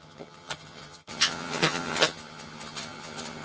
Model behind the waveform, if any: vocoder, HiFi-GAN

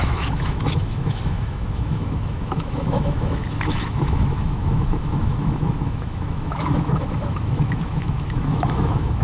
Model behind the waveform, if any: autoencoder, DAC-VAE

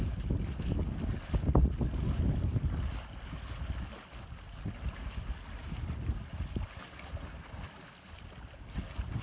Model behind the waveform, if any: none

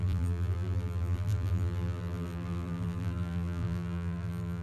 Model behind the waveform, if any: vocoder, BigVGAN v2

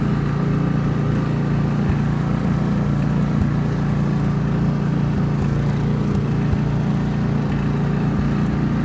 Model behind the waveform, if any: none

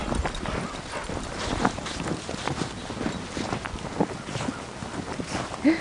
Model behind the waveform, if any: none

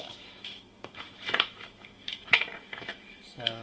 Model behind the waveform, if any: autoencoder, DAC-VAE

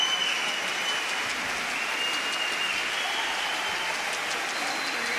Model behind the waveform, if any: none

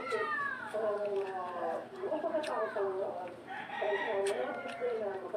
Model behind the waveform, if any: vocoder, BigVGAN v2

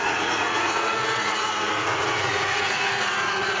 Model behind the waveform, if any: vocoder, Vocos